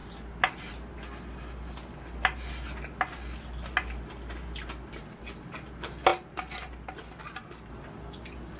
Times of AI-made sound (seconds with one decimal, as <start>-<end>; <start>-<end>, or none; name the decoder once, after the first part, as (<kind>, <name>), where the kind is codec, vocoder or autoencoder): none